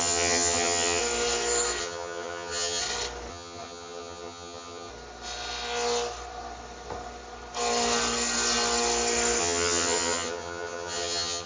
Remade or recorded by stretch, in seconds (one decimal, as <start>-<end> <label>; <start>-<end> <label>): 0.0-1.0 remade; 1.0-1.8 recorded; 1.8-2.8 remade; 2.8-3.3 recorded; 3.3-4.9 remade; 4.9-9.4 recorded; 9.4-11.5 remade